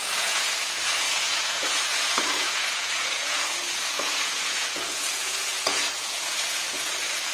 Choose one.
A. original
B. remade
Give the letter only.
B